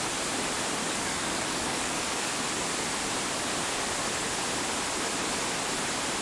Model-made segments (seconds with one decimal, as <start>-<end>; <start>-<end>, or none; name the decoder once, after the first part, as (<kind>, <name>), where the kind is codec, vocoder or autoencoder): 0.8-2.5 (codec, DAC)